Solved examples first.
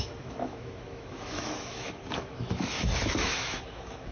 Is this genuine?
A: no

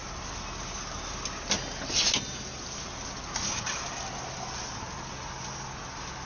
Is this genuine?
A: yes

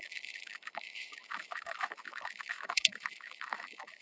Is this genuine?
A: no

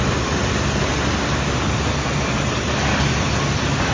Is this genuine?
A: yes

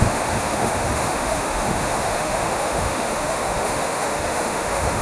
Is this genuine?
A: no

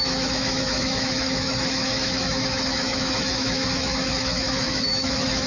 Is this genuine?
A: no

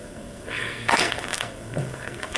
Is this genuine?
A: no